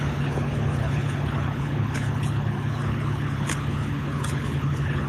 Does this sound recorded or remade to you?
remade